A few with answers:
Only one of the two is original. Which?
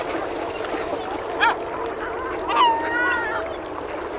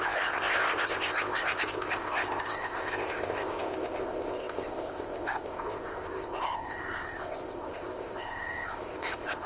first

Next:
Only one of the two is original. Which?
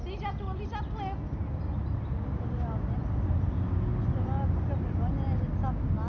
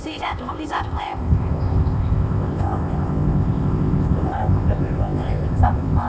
first